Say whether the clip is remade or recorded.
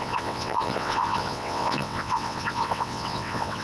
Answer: remade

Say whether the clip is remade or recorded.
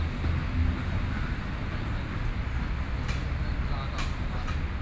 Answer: recorded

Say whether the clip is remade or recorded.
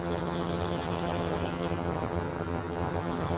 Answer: remade